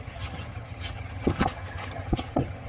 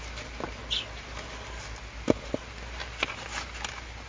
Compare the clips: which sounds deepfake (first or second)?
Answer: first